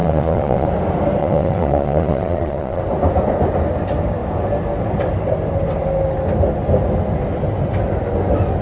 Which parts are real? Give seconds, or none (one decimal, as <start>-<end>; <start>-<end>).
0.7-1.2; 2.8-8.6